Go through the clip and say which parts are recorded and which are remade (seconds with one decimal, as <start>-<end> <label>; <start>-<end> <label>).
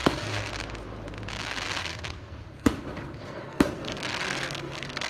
0.0-0.5 remade; 0.5-1.8 recorded; 1.8-5.1 remade